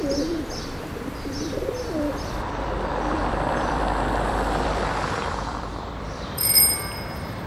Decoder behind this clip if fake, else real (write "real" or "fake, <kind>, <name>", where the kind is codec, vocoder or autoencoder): fake, vocoder, BigVGAN v2